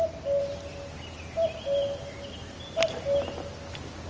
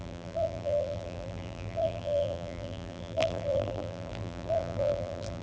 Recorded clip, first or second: first